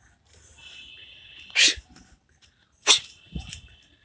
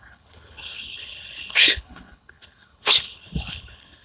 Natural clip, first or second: first